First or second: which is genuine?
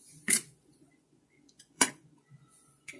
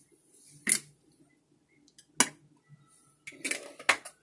second